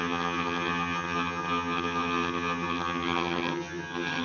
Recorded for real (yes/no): no